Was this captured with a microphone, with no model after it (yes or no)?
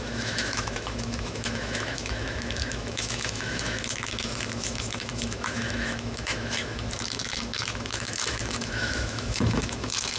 no